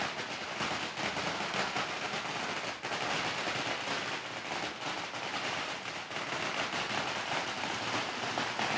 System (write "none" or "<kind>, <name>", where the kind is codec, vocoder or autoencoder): none